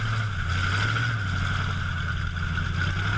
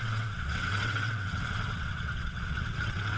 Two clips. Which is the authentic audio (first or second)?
first